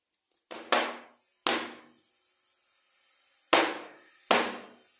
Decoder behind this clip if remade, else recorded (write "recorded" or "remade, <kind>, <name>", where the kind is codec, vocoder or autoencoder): recorded